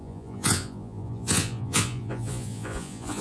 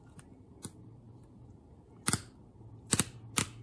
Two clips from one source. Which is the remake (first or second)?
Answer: first